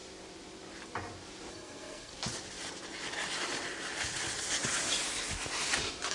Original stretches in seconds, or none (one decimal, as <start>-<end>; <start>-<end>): 0.0-1.5; 2.1-6.1

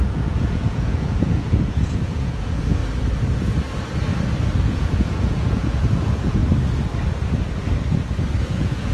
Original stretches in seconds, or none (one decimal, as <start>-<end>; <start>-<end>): 2.8-4.6; 6.4-8.4

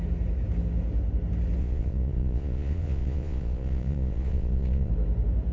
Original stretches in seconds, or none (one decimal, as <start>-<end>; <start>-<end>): 0.0-1.6; 4.9-5.5